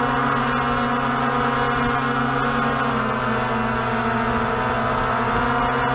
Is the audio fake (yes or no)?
no